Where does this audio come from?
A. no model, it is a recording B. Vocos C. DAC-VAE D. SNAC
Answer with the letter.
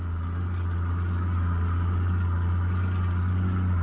A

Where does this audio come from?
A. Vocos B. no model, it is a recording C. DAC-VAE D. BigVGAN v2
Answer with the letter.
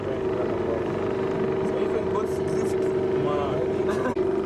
B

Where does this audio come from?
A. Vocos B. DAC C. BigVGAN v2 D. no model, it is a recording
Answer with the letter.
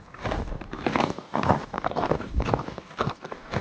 B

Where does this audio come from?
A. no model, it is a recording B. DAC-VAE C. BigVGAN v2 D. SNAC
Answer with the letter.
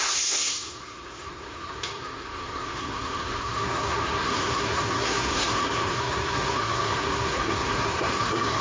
D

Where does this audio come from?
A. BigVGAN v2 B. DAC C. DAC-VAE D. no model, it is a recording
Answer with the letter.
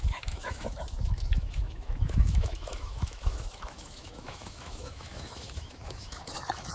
C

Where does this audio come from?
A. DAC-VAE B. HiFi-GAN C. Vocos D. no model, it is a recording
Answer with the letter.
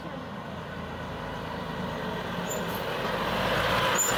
D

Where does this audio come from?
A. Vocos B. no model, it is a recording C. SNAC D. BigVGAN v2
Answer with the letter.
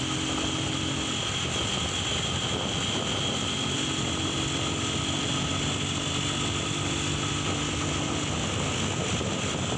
B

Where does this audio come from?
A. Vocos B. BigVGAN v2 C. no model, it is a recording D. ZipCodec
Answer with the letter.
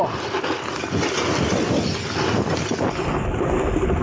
C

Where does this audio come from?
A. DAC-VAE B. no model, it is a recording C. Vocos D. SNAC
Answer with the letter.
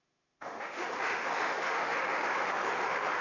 A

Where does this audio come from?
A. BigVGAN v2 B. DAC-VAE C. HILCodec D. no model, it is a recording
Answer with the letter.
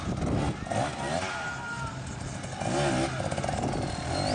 D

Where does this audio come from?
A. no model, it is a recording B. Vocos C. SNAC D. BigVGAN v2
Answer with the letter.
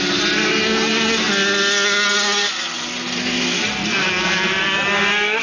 A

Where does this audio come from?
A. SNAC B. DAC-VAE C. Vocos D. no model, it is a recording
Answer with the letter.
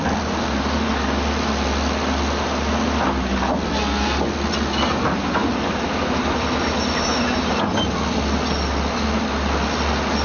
D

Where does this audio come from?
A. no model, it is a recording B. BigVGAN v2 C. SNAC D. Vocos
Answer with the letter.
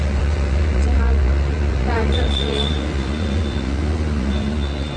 D